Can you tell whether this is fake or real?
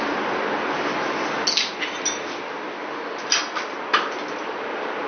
real